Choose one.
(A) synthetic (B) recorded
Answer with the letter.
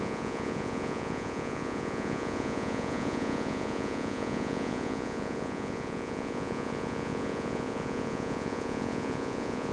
A